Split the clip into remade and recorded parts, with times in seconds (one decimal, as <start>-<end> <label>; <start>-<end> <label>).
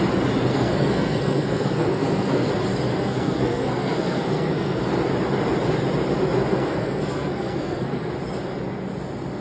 0.0-0.5 recorded; 0.5-2.5 remade; 2.5-2.9 recorded; 2.9-4.8 remade; 4.8-6.5 recorded; 6.5-8.1 remade; 8.1-9.4 recorded